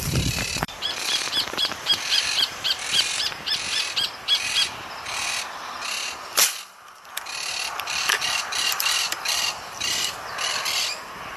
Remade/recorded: remade